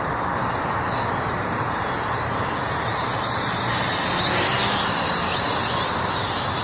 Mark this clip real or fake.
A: real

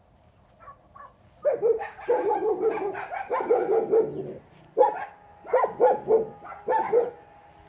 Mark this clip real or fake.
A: real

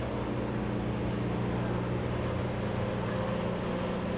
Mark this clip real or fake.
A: real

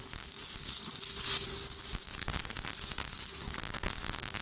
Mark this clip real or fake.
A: fake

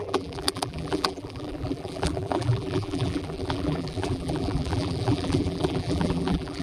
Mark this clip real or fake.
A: fake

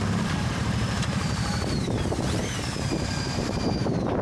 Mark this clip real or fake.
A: fake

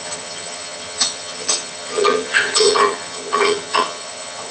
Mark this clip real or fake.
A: fake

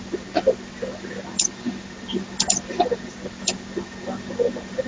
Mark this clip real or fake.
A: real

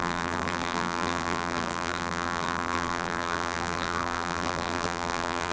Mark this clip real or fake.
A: fake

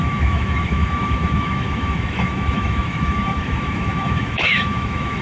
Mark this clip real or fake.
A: fake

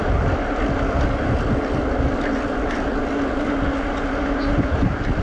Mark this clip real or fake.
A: real